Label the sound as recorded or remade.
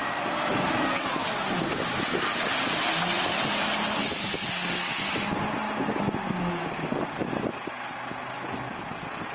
recorded